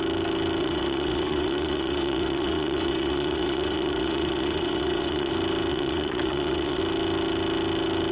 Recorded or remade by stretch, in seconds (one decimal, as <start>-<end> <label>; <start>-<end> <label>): 0.0-0.6 recorded; 0.6-5.3 remade; 5.3-5.7 recorded; 5.7-6.8 remade; 6.8-8.1 recorded